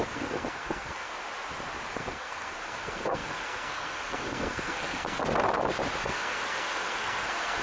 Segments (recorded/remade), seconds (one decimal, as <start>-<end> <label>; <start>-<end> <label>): 0.0-1.1 remade; 1.1-1.9 recorded; 1.9-5.2 remade; 5.2-6.0 recorded; 6.0-7.6 remade